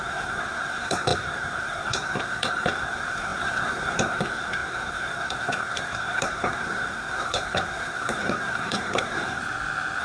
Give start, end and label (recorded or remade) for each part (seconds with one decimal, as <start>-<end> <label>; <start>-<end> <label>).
0.0-9.4 remade; 9.4-10.0 recorded